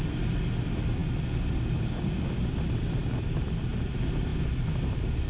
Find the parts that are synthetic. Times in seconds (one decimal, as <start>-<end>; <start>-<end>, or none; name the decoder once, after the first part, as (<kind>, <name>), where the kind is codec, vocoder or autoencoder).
none